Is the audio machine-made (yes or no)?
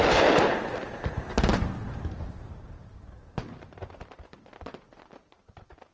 yes